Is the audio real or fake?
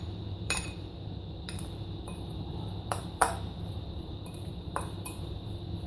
fake